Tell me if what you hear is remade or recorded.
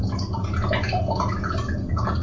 recorded